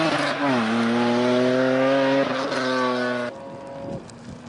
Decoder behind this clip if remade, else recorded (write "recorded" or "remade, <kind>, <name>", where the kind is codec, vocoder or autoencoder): recorded